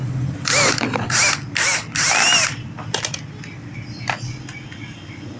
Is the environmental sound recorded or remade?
recorded